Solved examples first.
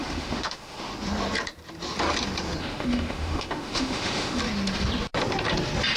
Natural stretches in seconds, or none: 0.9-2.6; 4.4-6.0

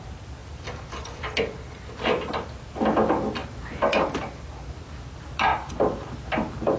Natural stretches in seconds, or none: 0.0-5.5; 6.1-6.8

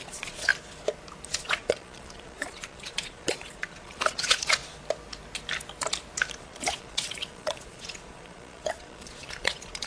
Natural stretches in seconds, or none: 0.5-1.3; 4.6-6.4

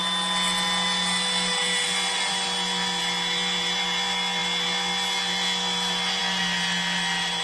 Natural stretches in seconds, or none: 0.0-7.4

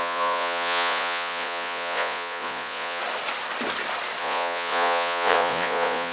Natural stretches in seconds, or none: 3.0-4.2

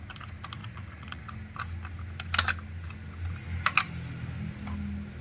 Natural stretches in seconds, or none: 0.0-0.6; 1.2-5.2